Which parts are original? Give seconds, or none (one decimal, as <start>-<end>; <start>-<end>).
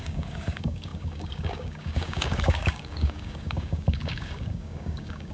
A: none